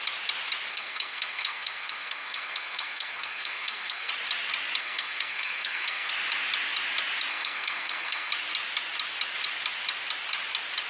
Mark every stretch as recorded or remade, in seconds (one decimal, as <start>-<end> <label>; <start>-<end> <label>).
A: 0.0-0.7 recorded; 0.7-4.1 remade; 4.1-4.8 recorded; 4.8-6.1 remade; 6.1-7.3 recorded; 7.3-8.3 remade; 8.3-10.9 recorded